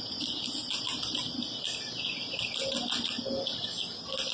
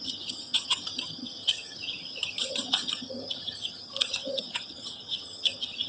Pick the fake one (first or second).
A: second